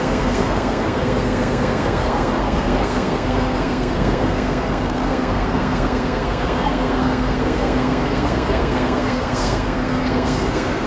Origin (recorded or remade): remade